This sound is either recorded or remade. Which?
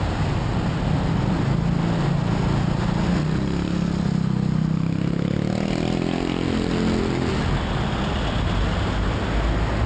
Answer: recorded